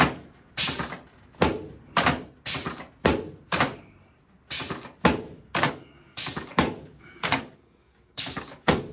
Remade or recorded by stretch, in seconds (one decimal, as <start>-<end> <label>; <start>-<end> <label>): 0.0-0.5 remade; 0.5-5.7 recorded; 5.7-8.9 remade